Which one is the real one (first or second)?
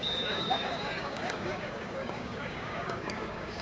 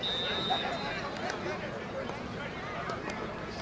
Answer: second